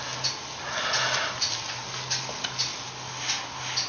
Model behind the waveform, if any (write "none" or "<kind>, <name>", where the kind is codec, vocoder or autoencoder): none